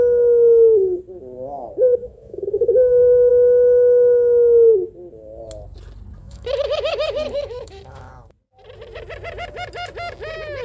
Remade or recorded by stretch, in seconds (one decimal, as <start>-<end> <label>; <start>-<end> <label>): 0.0-2.0 recorded; 2.0-3.3 remade; 3.3-6.2 recorded; 6.2-8.1 remade; 8.1-10.6 recorded

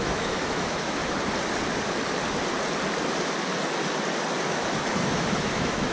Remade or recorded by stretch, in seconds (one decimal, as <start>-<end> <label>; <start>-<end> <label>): 0.0-1.0 remade; 1.0-4.5 recorded; 4.5-5.9 remade

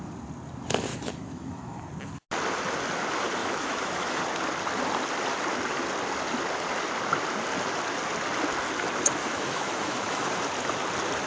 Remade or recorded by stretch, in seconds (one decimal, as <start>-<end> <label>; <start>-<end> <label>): 0.0-0.9 recorded; 0.9-1.9 remade; 1.9-3.4 recorded; 3.4-4.2 remade; 4.2-9.2 recorded; 9.2-10.3 remade; 10.3-11.3 recorded

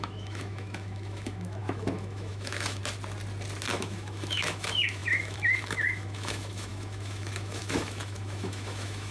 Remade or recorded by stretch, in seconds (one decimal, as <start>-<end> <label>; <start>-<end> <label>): 0.0-2.8 remade; 2.8-3.7 recorded; 3.7-9.1 remade

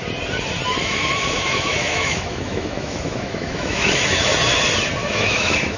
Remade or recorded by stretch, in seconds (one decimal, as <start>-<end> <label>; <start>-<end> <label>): 0.0-0.8 recorded; 0.8-4.3 remade; 4.3-5.0 recorded; 5.0-5.8 remade

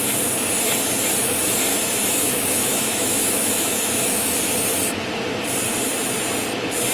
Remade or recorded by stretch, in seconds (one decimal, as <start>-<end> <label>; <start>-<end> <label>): 0.0-1.7 recorded; 1.7-4.4 remade; 4.4-6.9 recorded